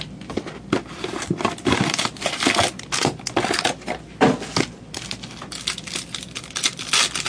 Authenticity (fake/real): real